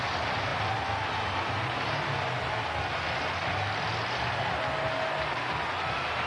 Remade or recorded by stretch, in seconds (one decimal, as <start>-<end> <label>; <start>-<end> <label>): 0.0-6.3 recorded